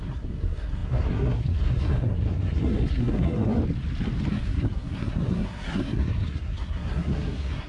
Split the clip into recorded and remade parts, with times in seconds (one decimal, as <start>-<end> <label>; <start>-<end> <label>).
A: 0.0-3.6 remade; 3.6-4.3 recorded; 4.3-7.7 remade